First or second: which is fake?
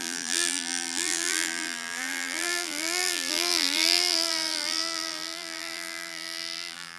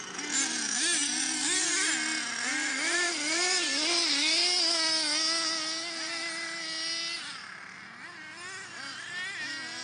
first